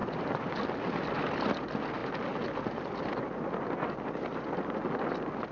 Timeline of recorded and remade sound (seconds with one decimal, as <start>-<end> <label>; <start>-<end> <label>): 0.0-0.5 remade; 0.5-5.5 recorded